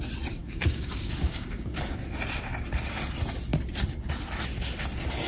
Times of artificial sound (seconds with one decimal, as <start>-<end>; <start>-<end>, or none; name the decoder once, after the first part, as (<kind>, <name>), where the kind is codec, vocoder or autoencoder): 0.4-1.8 (codec, DAC)